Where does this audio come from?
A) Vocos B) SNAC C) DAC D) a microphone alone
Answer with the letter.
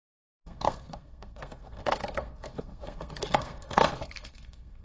B